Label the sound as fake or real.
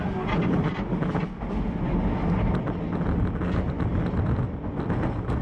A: real